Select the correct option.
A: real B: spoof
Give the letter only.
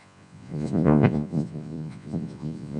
B